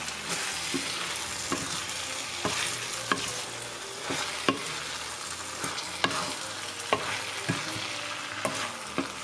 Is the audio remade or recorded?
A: recorded